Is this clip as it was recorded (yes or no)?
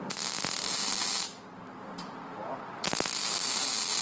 yes